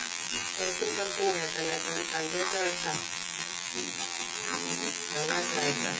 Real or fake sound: fake